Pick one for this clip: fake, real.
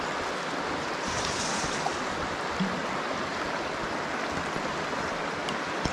real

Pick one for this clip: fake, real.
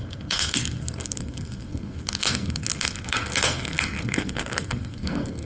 fake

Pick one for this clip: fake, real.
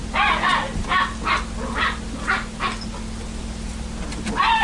real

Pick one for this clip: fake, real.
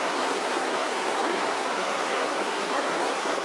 fake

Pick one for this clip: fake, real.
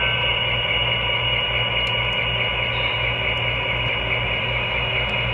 real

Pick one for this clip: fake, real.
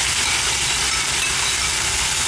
real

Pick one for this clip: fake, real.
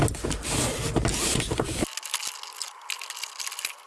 real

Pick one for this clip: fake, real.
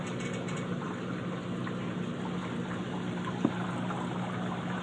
real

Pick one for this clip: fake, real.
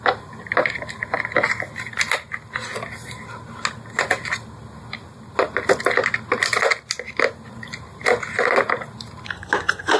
real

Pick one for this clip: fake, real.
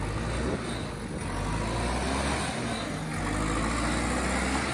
real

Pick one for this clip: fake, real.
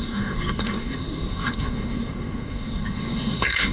fake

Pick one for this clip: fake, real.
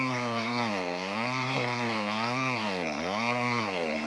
fake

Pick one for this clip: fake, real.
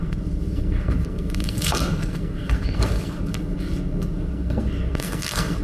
fake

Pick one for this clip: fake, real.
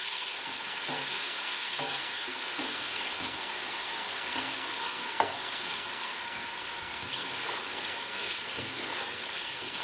fake